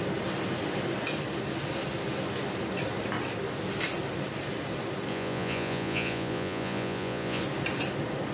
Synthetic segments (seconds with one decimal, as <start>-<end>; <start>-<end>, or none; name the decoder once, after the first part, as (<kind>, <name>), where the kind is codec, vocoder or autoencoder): 5.1-7.4 (vocoder, Vocos)